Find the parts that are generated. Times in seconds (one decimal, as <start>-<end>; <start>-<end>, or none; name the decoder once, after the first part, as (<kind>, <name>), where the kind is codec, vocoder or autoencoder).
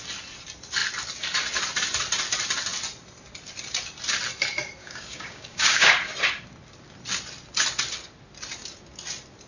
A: 4.8-5.9 (codec, DAC)